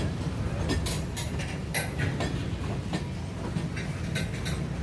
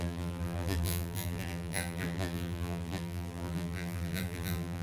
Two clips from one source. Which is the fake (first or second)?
second